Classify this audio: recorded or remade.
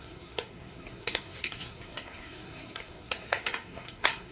remade